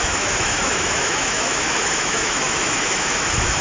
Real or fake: fake